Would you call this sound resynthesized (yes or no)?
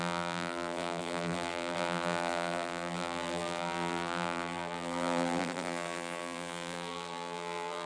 yes